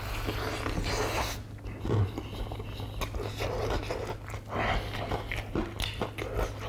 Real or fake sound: real